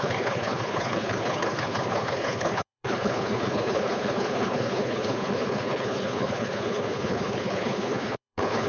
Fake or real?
fake